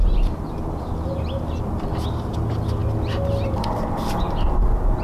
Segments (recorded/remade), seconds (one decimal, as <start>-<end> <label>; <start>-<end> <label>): 0.0-5.0 recorded